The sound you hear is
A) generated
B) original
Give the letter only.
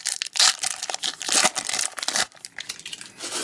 B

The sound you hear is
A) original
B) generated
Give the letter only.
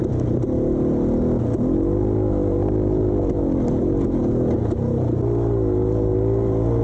A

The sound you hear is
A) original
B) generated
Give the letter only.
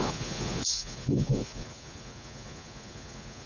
B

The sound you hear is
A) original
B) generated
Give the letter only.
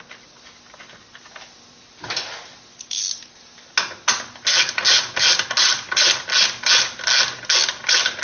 A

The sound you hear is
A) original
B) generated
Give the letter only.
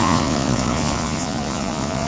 B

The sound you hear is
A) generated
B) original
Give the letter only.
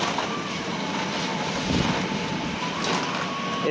B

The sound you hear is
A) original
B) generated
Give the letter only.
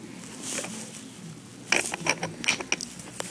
A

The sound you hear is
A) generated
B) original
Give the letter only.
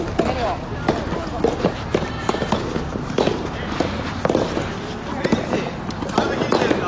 B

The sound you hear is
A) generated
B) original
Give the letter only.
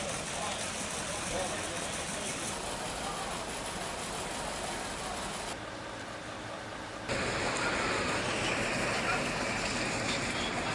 B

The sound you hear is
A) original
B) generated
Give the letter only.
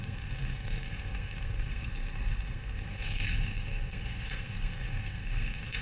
B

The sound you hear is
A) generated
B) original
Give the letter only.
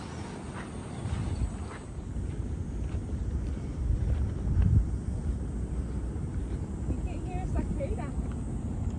B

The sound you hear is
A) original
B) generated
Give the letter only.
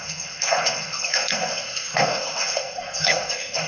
B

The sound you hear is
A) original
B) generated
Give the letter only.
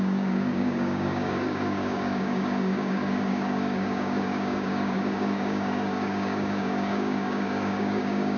B